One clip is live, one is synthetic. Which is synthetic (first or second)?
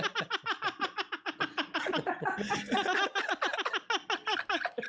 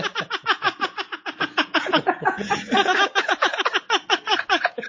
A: second